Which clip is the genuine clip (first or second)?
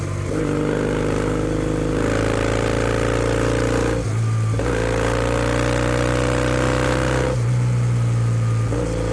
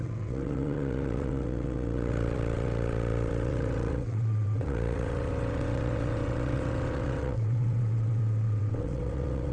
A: first